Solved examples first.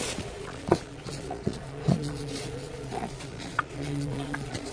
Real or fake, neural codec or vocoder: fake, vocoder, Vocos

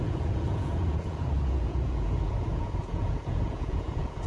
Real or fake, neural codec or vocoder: fake, vocoder, Vocos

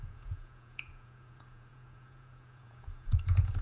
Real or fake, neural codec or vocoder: fake, vocoder, Vocos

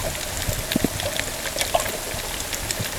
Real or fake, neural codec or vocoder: real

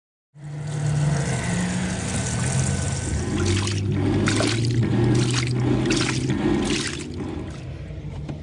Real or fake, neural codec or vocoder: real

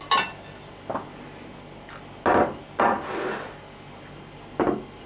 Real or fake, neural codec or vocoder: real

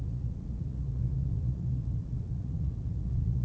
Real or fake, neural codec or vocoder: fake, vocoder, Vocos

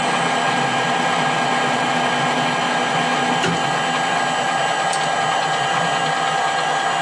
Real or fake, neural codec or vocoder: real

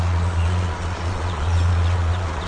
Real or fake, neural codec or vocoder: fake, vocoder, Vocos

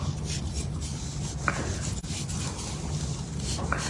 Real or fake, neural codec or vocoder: real